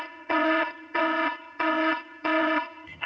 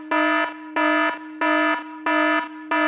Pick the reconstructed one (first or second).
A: first